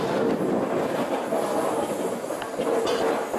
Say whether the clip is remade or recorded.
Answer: recorded